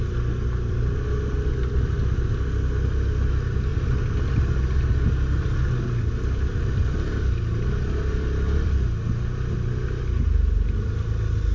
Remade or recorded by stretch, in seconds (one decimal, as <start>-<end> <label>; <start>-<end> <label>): 0.0-11.5 recorded